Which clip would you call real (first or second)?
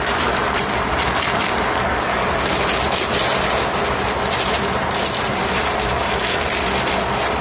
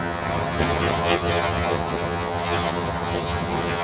first